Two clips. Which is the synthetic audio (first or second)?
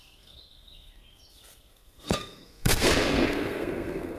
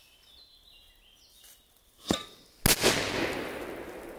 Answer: first